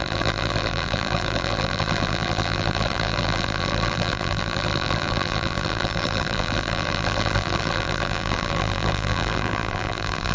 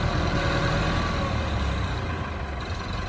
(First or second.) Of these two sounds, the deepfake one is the first